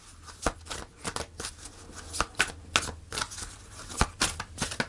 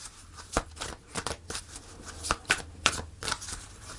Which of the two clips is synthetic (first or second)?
second